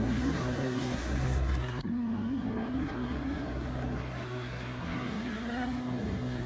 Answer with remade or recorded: remade